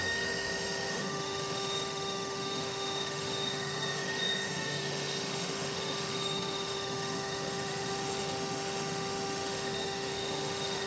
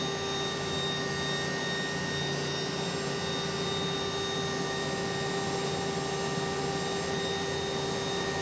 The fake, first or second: first